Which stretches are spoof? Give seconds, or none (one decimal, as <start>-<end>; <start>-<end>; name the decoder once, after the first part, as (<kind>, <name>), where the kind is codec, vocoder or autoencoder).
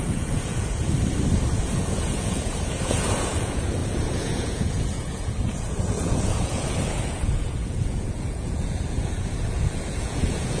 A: 0.0-0.8 (vocoder, Vocos); 1.5-10.6